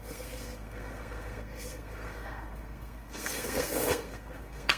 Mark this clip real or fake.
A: fake